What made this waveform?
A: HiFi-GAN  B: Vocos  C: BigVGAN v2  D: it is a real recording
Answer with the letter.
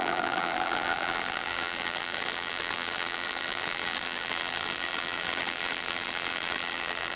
C